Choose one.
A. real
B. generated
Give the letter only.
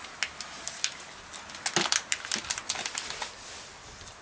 A